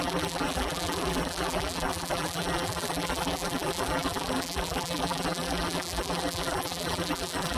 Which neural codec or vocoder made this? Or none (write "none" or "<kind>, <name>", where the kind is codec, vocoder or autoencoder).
vocoder, BigVGAN v2